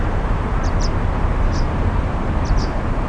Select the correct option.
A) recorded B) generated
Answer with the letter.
B